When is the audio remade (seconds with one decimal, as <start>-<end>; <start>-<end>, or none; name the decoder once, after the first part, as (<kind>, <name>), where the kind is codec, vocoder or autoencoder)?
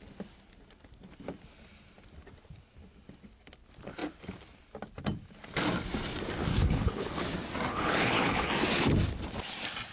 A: 6.5-7.2 (codec, HILCodec); 7.7-8.5